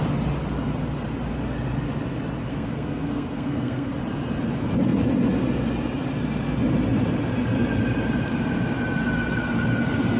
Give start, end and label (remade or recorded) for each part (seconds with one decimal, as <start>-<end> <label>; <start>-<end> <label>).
0.0-2.5 recorded; 2.5-3.9 remade; 3.9-10.2 recorded